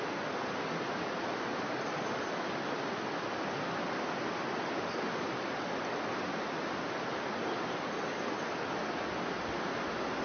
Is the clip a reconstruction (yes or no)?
no